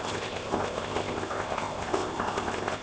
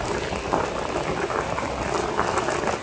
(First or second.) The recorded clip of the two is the second